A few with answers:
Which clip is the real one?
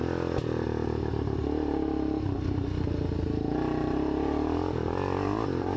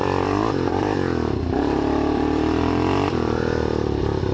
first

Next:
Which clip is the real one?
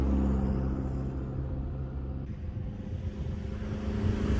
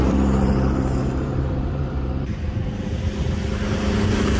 first